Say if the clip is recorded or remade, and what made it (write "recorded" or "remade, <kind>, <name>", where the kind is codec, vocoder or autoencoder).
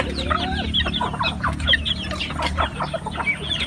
recorded